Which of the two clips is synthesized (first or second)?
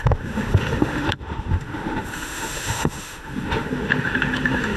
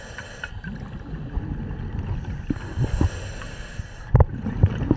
first